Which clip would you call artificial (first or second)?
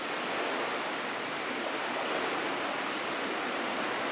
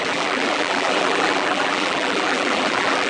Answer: second